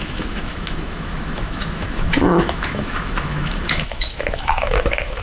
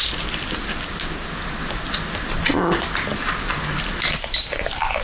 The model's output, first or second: first